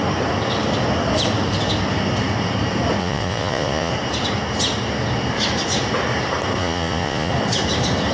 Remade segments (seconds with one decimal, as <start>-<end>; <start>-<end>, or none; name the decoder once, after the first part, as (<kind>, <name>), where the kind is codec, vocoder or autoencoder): 3.0-3.9 (vocoder, Vocos); 6.6-7.3